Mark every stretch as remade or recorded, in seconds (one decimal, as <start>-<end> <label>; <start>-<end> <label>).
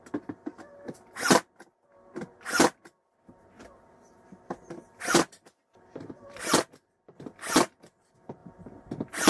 0.0-8.4 recorded; 8.4-9.3 remade